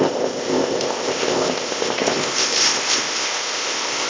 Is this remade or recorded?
remade